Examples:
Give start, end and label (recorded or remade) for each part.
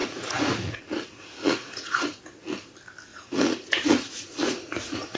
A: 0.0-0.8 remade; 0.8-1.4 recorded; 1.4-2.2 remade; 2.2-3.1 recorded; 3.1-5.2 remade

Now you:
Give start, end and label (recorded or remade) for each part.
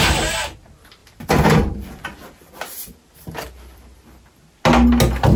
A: 0.0-1.0 recorded; 1.0-4.2 remade; 4.2-5.4 recorded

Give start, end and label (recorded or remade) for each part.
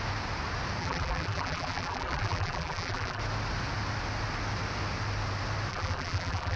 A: 0.0-0.8 recorded; 0.8-3.2 remade; 3.2-5.7 recorded; 5.7-6.6 remade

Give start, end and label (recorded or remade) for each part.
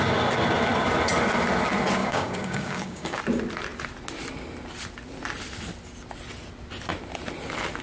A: 0.0-2.0 recorded; 2.0-3.2 remade; 3.2-7.8 recorded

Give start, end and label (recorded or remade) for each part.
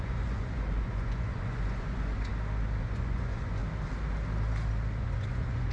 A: 0.0-2.3 remade; 2.3-2.8 recorded; 2.8-3.6 remade; 3.6-5.0 recorded; 5.0-5.7 remade